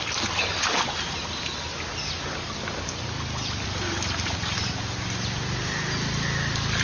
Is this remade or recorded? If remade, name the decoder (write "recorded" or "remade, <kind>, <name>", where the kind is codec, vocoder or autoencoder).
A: recorded